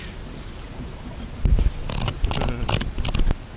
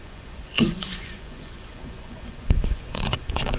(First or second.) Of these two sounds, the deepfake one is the second